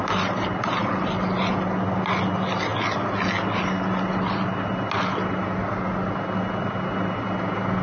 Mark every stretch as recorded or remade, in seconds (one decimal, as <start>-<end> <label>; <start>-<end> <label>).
0.0-7.8 recorded